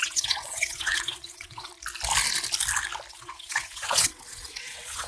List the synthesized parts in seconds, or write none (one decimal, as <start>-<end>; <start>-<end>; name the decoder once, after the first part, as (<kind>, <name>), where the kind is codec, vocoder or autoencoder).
0.0-1.7 (vocoder, WaveNeXt); 3.1-5.1